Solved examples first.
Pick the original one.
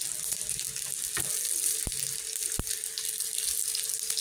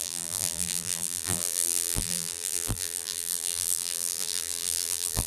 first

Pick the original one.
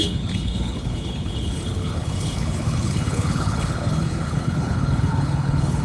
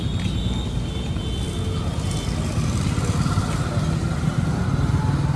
second